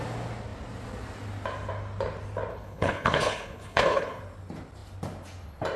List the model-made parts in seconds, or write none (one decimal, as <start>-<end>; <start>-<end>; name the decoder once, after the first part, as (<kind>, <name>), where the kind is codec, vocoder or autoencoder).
2.5-4.2 (codec, HILCodec)